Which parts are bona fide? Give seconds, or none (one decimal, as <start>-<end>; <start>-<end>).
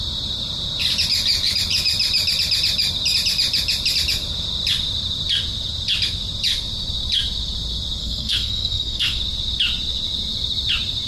0.0-8.0; 9.2-11.1